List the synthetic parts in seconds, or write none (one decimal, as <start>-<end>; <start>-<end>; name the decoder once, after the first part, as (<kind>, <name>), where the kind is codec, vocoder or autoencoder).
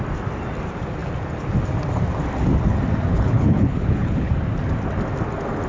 3.1-4.3 (codec, HILCodec)